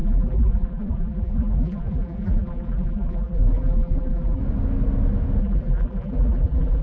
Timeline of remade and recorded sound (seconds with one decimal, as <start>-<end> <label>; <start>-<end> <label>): 0.0-4.4 remade; 4.4-5.4 recorded; 5.4-6.8 remade